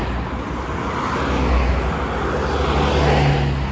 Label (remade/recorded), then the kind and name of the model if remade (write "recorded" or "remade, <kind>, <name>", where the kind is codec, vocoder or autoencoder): recorded